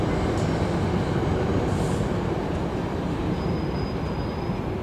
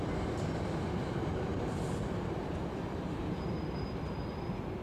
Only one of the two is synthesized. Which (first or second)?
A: second